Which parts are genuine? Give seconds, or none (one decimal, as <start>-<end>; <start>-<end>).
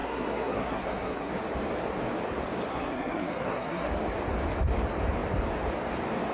1.3-2.7; 3.9-6.3